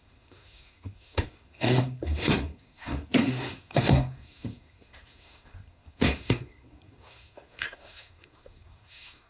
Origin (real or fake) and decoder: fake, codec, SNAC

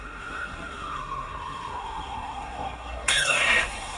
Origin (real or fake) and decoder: fake, codec, SNAC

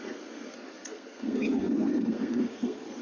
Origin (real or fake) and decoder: fake, codec, SNAC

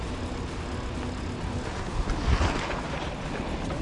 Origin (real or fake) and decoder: real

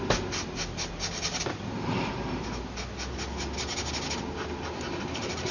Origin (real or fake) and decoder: real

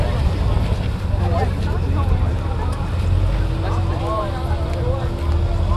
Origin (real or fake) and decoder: real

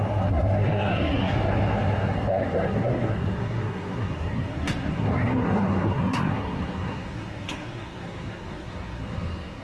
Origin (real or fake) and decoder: fake, codec, SNAC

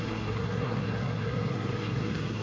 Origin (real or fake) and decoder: fake, codec, SNAC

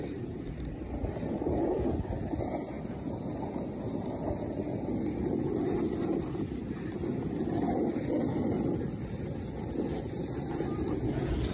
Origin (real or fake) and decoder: real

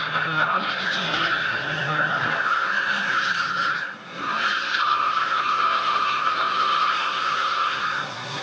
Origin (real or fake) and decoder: fake, codec, SNAC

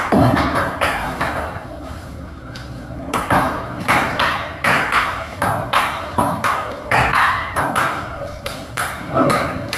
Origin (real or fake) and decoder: fake, codec, SNAC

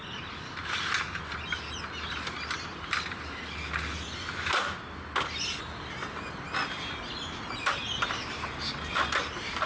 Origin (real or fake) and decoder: real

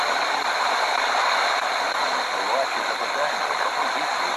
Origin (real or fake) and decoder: real